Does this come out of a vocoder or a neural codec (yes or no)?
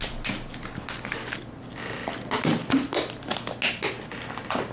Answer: no